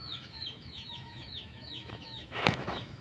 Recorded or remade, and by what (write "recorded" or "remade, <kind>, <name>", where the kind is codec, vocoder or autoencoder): remade, autoencoder, DAC-VAE